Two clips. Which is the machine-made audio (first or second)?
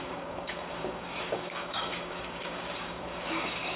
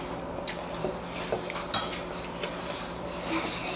first